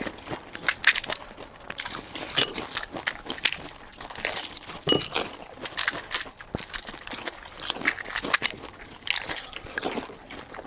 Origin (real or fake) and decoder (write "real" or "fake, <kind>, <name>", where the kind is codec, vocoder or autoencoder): real